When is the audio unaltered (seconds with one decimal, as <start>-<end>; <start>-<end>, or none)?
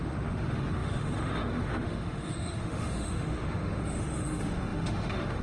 none